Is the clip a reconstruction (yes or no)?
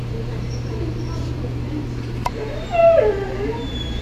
yes